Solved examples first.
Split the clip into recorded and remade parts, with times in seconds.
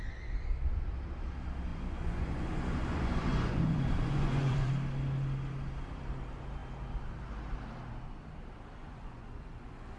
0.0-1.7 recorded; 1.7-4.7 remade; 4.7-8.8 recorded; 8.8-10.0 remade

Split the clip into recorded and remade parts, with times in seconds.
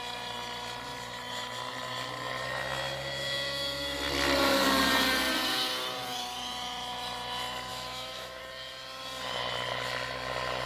0.0-7.7 recorded; 7.7-8.4 remade; 8.4-10.7 recorded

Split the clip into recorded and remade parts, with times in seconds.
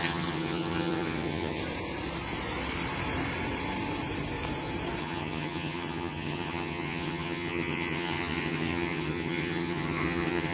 0.0-1.6 remade; 1.6-5.0 recorded; 5.0-10.5 remade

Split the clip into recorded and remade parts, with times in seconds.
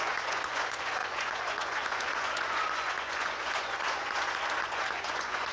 0.0-5.5 remade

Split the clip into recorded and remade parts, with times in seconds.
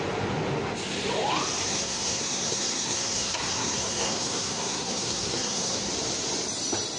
0.0-1.7 recorded; 1.7-5.9 remade; 5.9-7.0 recorded